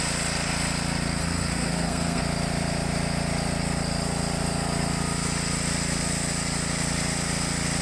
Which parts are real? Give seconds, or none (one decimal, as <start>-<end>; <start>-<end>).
0.0-1.2; 2.2-7.8